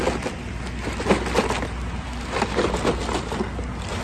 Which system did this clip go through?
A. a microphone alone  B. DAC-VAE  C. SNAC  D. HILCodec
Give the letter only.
A